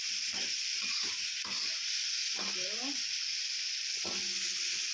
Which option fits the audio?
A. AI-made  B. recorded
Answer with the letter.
B